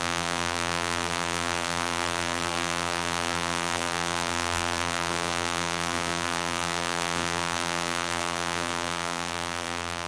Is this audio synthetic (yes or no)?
yes